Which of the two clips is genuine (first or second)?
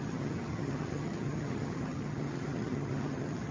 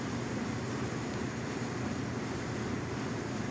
second